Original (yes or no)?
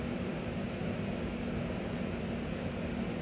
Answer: yes